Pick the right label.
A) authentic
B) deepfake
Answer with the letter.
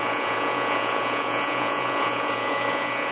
B